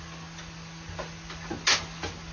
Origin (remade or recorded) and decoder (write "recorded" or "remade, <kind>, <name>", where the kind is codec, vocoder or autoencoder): recorded